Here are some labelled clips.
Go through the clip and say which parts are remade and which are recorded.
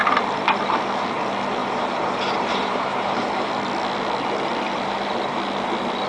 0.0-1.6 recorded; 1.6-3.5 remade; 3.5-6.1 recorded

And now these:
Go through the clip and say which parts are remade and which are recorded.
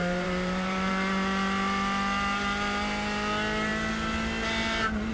0.0-0.9 remade; 0.9-5.1 recorded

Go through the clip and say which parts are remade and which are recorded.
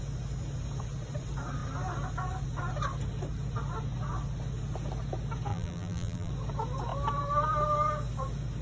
0.0-5.5 recorded; 5.5-6.3 remade; 6.3-8.6 recorded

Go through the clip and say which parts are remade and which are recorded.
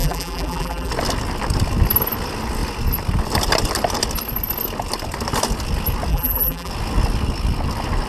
0.0-0.9 remade; 0.9-6.1 recorded; 6.1-6.7 remade; 6.7-8.1 recorded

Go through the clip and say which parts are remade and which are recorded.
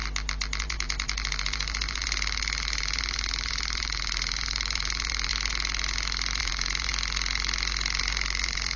0.0-0.6 recorded; 0.6-5.3 remade; 5.3-6.4 recorded; 6.4-6.9 remade; 6.9-8.0 recorded; 8.0-8.8 remade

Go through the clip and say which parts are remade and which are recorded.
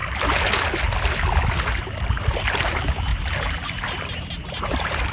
0.0-2.5 recorded; 2.5-3.1 remade; 3.1-4.6 recorded; 4.6-5.1 remade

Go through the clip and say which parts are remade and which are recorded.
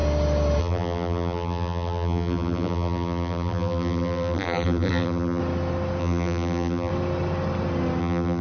0.0-0.6 recorded; 0.6-5.4 remade; 5.4-6.0 recorded; 6.0-6.9 remade; 6.9-8.0 recorded; 8.0-8.4 remade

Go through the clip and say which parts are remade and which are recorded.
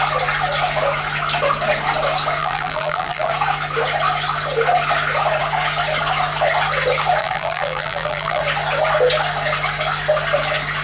0.0-2.4 recorded; 2.4-3.3 remade; 3.3-7.2 recorded; 7.2-8.4 remade; 8.4-10.8 recorded